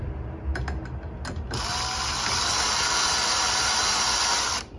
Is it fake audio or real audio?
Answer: real